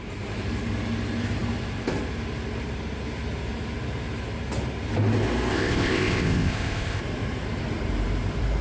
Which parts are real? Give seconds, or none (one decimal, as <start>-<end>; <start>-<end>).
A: 0.0-5.5; 7.0-8.6